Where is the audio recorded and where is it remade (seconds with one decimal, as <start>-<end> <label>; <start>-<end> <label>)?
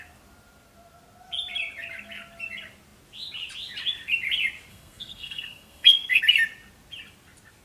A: 0.0-4.7 recorded; 4.7-6.2 remade; 6.2-7.6 recorded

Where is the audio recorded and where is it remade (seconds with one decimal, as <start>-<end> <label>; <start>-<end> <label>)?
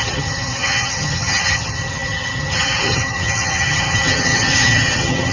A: 0.0-5.3 remade